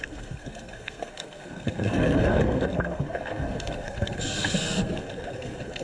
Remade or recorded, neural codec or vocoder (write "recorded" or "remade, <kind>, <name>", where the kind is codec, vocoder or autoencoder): remade, codec, SNAC